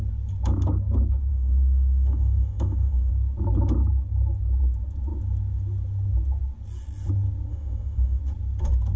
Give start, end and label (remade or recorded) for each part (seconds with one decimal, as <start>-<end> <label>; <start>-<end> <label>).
0.0-1.3 recorded; 1.3-3.1 remade; 3.1-7.5 recorded; 7.5-8.2 remade; 8.2-9.0 recorded